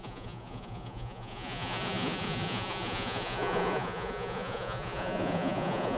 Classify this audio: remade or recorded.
remade